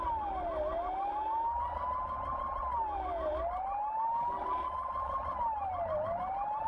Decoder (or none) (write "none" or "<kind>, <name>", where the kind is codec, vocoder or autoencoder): none